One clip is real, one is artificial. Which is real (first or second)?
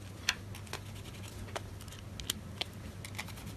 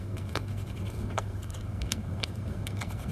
first